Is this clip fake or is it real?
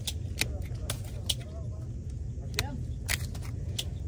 real